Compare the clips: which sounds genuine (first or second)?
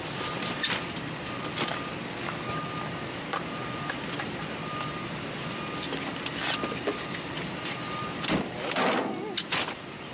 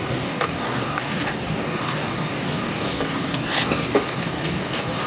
first